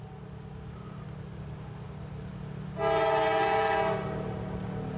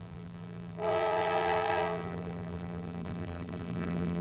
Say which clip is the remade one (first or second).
second